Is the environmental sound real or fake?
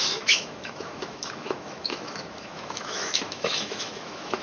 fake